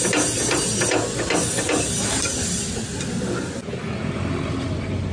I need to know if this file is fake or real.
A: real